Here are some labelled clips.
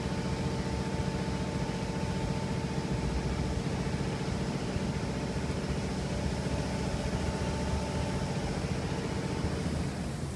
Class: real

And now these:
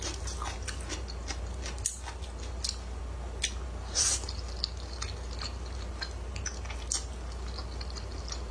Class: real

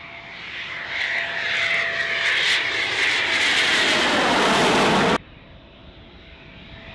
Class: real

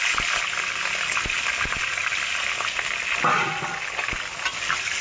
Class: real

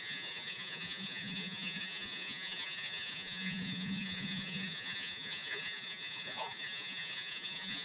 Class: fake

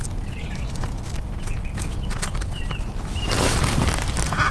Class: real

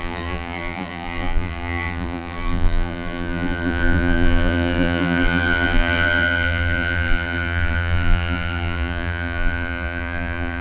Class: fake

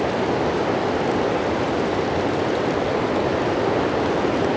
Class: real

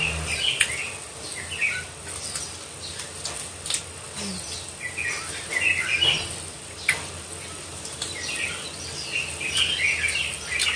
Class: real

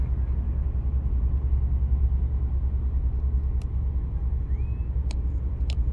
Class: real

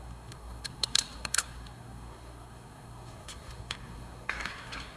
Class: fake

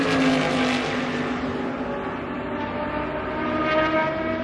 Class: real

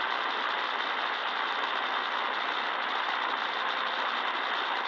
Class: real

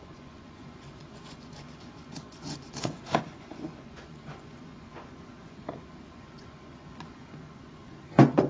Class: fake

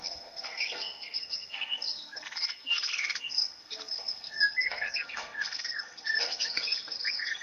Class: fake